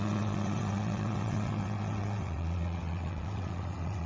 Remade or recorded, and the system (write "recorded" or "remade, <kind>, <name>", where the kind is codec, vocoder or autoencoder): remade, vocoder, WaveNeXt